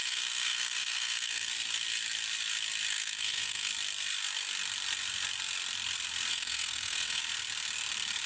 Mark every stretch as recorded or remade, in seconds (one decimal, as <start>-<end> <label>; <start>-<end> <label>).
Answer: 0.0-1.5 remade; 1.5-2.9 recorded; 2.9-3.7 remade; 3.7-6.3 recorded; 6.3-7.2 remade; 7.2-8.3 recorded